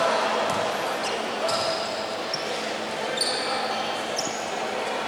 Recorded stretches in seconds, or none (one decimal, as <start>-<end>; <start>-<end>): 0.0-1.0; 2.0-5.1